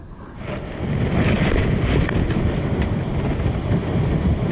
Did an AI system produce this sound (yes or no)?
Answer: no